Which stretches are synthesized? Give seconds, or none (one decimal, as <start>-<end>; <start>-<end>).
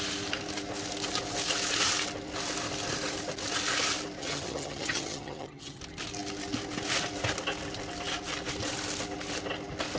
4.2-5.8